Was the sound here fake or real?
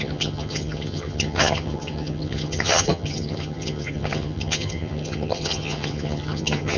fake